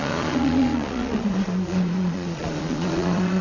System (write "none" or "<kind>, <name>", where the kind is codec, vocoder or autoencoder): vocoder, Vocos